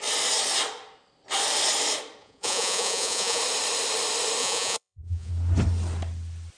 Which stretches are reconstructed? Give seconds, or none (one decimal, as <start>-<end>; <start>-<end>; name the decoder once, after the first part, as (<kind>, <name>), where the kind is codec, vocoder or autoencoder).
2.2-3.4 (vocoder, Vocos); 4.4-5.3